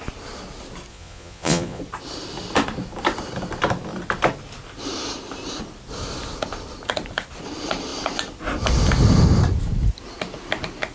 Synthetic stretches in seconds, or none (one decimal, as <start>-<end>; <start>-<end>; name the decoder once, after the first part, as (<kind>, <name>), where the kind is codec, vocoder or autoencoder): 0.9-1.8 (vocoder, Vocos)